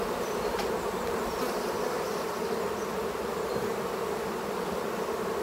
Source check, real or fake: real